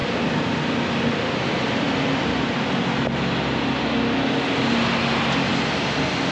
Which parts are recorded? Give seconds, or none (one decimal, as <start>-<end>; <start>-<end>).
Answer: 3.8-6.3